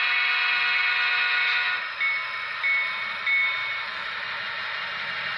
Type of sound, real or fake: real